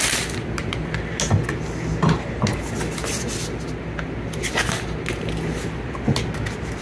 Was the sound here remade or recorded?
recorded